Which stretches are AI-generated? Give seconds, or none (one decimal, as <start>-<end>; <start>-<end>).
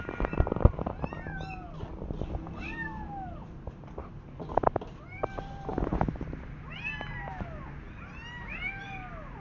none